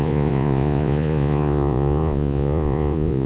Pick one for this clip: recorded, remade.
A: remade